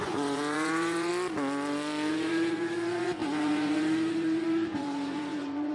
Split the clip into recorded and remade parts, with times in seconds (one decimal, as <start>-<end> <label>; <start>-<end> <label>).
0.0-1.1 remade; 1.1-2.1 recorded; 2.1-5.7 remade

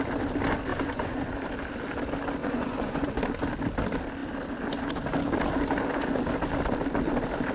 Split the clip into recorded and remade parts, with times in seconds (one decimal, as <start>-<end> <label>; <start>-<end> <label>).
0.0-0.7 recorded; 0.7-1.3 remade; 1.3-2.4 recorded; 2.4-3.2 remade; 3.2-7.5 recorded